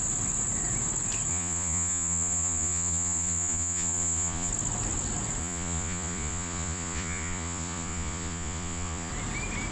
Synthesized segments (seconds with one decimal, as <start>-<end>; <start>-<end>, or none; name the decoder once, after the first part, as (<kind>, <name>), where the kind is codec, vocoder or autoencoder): 1.3-4.5 (vocoder, Vocos); 5.4-9.1